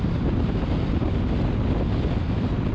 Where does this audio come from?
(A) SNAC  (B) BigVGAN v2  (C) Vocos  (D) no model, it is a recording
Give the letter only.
D